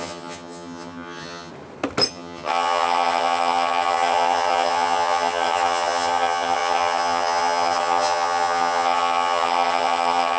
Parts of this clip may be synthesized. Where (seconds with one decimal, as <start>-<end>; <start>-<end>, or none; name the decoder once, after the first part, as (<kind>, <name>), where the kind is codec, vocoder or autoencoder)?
0.0-1.5 (vocoder, HiFi-GAN); 2.1-10.4